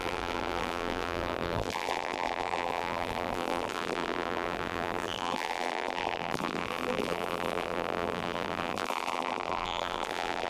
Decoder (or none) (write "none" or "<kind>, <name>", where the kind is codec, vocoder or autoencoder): vocoder, BigVGAN v2